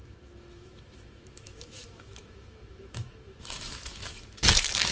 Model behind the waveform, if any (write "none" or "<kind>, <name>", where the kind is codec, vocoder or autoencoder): autoencoder, DAC-VAE